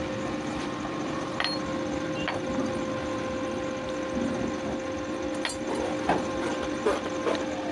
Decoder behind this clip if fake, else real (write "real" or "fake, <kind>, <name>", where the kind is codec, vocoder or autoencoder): real